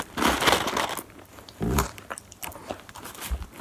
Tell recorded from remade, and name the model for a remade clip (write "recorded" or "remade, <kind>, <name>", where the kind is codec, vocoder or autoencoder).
remade, vocoder, BigVGAN v2